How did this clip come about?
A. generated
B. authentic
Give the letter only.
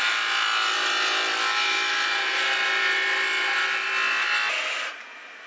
B